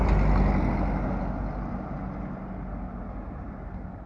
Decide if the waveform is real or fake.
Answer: real